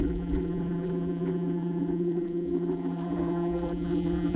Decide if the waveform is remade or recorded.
remade